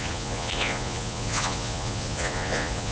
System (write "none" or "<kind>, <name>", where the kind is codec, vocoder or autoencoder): vocoder, Vocos